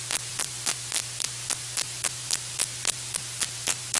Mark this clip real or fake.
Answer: real